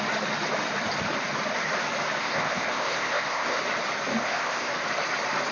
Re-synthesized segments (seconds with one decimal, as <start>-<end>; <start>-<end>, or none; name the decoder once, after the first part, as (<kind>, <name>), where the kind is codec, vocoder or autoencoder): 2.2-3.6 (codec, ZipCodec); 4.1-4.7